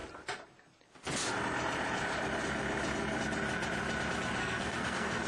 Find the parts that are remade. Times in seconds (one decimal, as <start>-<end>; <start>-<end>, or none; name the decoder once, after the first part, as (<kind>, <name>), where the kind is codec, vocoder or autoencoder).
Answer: 4.4-5.3 (codec, SNAC)